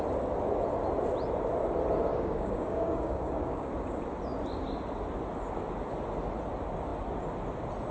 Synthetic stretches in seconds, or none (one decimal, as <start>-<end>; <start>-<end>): 2.1-3.7